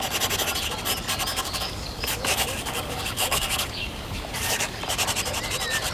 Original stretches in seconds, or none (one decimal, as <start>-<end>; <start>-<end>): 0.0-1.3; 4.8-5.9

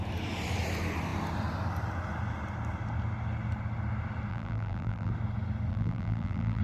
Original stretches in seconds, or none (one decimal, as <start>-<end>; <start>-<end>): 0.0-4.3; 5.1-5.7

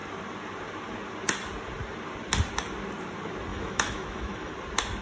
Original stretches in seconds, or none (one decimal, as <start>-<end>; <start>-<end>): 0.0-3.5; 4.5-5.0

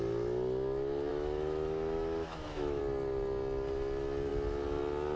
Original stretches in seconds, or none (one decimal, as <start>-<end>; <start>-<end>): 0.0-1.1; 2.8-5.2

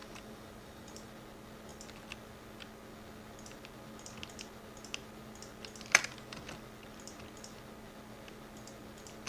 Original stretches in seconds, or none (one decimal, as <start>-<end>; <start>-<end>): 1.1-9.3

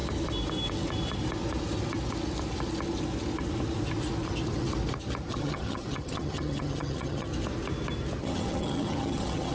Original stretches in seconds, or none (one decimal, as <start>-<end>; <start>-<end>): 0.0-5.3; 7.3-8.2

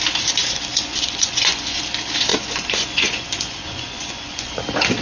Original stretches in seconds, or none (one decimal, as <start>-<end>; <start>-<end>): 0.0-0.4; 1.8-2.3; 4.6-5.0

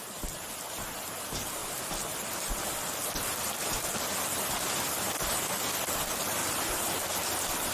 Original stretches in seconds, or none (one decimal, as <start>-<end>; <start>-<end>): 0.0-1.6; 3.4-6.4